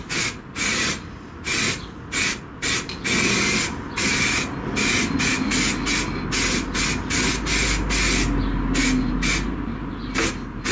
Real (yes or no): yes